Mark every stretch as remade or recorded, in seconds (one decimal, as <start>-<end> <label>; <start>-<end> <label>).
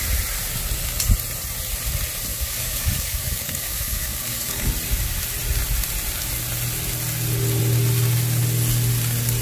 0.0-2.3 recorded; 2.3-4.7 remade; 4.7-9.4 recorded